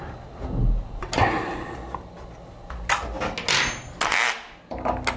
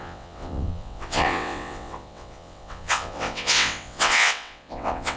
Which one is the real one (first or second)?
first